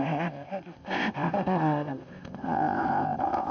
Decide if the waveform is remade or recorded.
remade